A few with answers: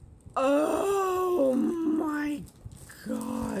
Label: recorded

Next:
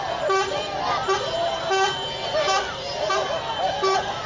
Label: recorded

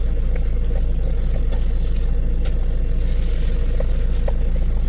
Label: recorded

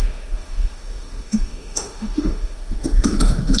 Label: remade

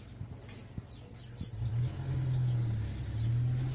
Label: recorded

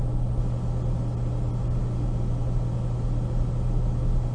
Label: recorded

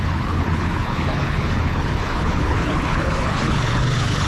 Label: remade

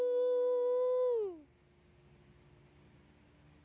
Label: recorded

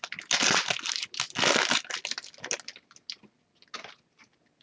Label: recorded